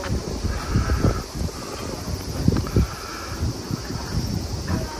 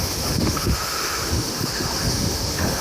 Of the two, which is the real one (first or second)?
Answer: first